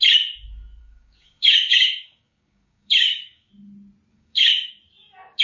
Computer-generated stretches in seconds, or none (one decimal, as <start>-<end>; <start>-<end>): 0.8-3.5; 4.1-4.7